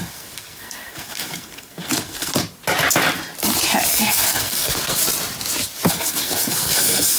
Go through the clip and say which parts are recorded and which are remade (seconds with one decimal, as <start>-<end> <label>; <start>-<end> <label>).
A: 0.0-2.3 remade; 2.3-3.9 recorded; 3.9-5.0 remade; 5.0-5.9 recorded; 5.9-7.2 remade